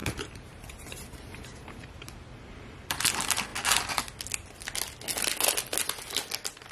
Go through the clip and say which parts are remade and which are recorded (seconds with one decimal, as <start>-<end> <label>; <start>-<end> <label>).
0.0-2.9 remade; 2.9-6.7 recorded